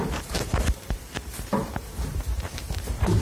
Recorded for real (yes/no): no